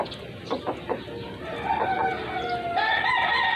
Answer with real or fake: real